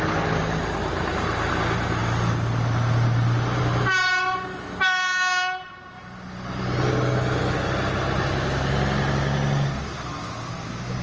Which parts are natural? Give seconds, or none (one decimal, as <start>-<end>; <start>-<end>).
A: 0.0-11.0